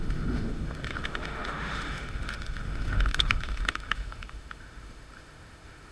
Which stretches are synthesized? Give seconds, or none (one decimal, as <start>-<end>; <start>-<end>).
0.0-5.9